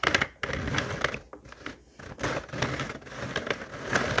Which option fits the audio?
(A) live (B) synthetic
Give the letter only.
A